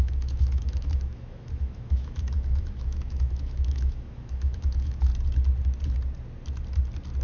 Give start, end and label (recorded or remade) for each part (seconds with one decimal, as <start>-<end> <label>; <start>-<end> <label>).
0.0-5.1 remade; 5.1-7.2 recorded